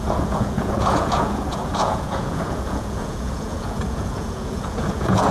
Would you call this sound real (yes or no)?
no